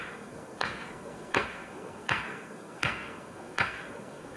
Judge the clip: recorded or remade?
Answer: remade